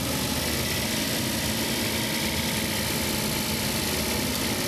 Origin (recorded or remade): recorded